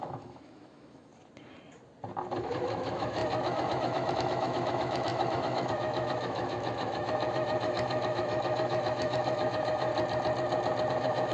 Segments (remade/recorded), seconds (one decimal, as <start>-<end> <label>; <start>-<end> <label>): 0.0-1.1 remade; 1.1-2.4 recorded; 2.4-9.9 remade; 9.9-10.9 recorded; 10.9-11.3 remade